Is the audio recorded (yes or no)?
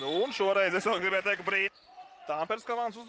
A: no